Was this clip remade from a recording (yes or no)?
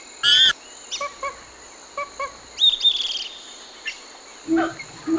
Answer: no